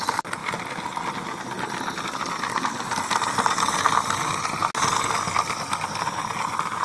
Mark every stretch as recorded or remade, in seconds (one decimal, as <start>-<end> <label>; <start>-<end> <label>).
0.0-6.8 recorded